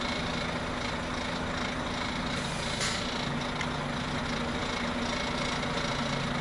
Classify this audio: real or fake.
real